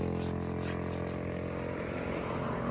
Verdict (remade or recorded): recorded